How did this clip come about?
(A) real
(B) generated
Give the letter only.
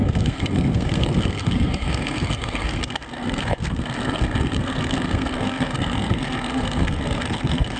B